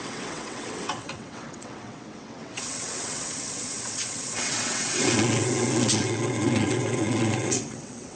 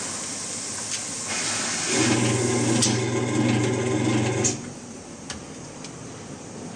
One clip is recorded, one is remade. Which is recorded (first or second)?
second